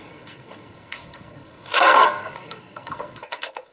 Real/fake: fake